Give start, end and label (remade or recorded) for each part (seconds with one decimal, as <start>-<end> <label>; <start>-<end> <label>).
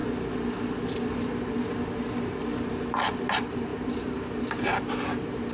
0.0-3.3 recorded; 3.3-5.5 remade